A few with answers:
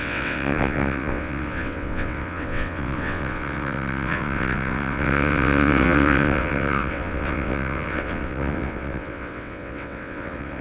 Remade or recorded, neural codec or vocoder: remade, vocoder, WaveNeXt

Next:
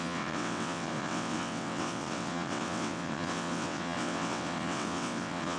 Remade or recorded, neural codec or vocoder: remade, vocoder, WaveNeXt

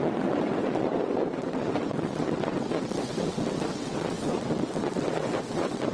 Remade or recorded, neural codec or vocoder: remade, vocoder, WaveNeXt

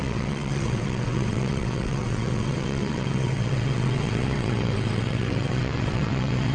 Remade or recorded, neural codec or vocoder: remade, vocoder, WaveNeXt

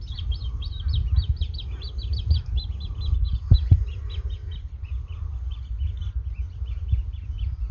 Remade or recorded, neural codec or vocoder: recorded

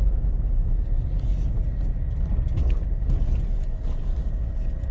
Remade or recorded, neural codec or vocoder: recorded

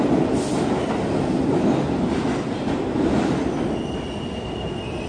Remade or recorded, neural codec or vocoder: recorded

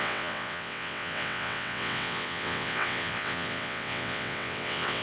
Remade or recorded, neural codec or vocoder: remade, vocoder, WaveNeXt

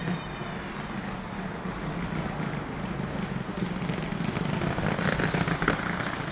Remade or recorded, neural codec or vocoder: recorded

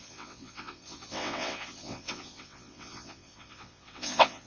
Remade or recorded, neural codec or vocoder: remade, vocoder, WaveNeXt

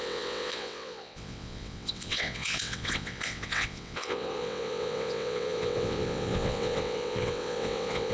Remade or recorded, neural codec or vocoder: remade, vocoder, WaveNeXt